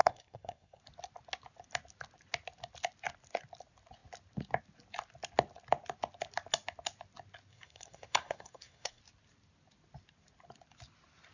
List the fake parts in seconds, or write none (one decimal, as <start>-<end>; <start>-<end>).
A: 0.0-0.8; 7.5-9.0